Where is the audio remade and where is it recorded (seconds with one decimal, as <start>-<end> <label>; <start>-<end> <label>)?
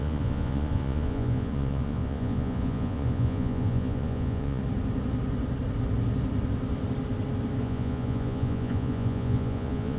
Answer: 0.0-4.6 remade; 4.6-7.6 recorded; 7.6-10.0 remade